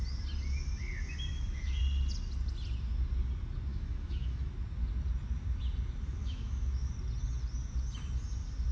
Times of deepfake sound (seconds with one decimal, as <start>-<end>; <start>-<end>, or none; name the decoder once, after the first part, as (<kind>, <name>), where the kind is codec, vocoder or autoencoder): 1.3-1.8 (autoencoder, DAC-VAE); 3.7-4.5; 6.2-6.9